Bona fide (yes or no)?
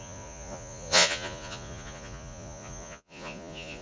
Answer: no